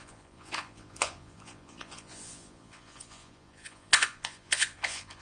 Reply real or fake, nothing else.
fake